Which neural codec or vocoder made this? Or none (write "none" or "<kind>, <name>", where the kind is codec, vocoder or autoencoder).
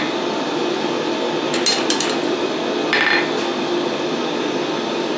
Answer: none